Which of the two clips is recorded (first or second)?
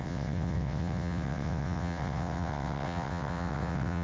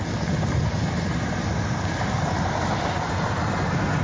second